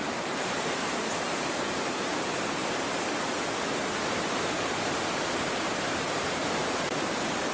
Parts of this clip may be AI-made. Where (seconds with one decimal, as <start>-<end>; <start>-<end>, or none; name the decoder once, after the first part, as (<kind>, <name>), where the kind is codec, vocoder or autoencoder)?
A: 0.0-2.6 (vocoder, BigVGAN v2); 5.2-7.5